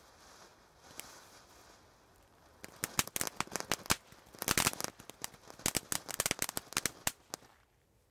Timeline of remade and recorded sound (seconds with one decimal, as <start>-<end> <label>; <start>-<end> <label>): 0.0-8.1 recorded